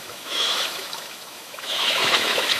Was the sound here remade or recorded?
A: remade